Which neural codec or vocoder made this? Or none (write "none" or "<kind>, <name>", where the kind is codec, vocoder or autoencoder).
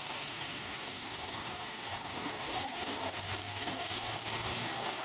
codec, DAC